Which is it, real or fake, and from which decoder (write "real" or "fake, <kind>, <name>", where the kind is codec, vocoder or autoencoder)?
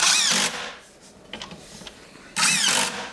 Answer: real